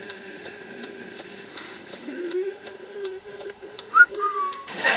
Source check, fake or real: fake